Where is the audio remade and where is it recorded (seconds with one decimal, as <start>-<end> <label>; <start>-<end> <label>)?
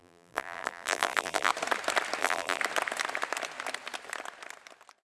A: 0.0-1.5 remade; 1.5-2.2 recorded; 2.2-2.6 remade; 2.6-5.1 recorded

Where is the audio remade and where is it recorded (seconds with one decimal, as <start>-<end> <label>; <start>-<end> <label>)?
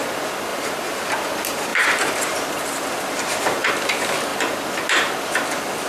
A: 0.0-0.5 recorded; 0.5-1.0 remade; 1.0-1.7 recorded; 1.7-3.7 remade; 3.7-5.9 recorded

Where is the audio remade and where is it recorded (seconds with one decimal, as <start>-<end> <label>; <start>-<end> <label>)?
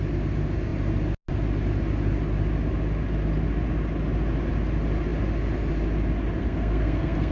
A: 0.0-6.4 recorded; 6.4-7.3 remade